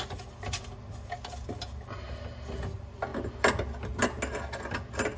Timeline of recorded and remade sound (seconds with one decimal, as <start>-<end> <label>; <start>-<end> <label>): 0.0-5.2 recorded